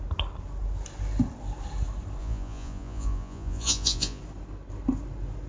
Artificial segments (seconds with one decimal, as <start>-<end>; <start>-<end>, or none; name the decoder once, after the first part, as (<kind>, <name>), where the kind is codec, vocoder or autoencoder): 2.2-4.2 (vocoder, Vocos)